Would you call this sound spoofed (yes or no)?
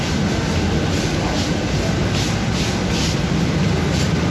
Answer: no